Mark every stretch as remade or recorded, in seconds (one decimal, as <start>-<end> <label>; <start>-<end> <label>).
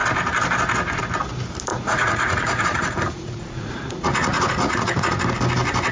0.0-1.7 recorded; 1.7-5.2 remade; 5.2-5.9 recorded